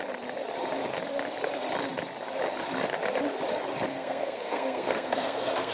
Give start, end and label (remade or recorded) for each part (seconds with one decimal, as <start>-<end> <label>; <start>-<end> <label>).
0.0-3.9 recorded; 3.9-5.7 remade